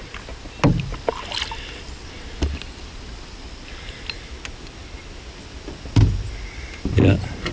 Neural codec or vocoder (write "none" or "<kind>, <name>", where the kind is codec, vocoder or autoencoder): none